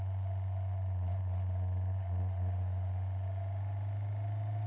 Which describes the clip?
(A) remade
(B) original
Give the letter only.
B